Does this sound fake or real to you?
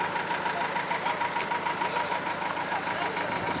real